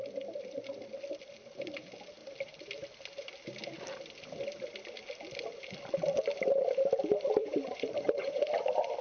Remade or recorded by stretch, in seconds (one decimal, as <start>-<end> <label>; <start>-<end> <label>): 0.0-7.4 recorded; 7.4-8.5 remade; 8.5-9.0 recorded